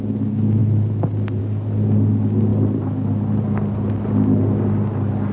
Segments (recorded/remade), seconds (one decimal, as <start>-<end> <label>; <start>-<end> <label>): 0.0-5.3 recorded